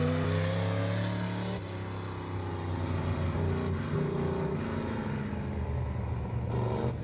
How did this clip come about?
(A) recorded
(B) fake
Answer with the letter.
A